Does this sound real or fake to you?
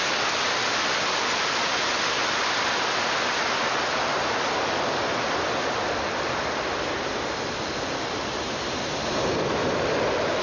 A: real